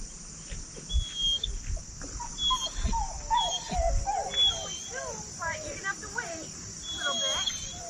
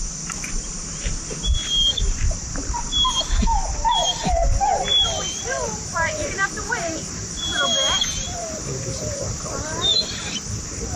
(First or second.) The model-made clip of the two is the second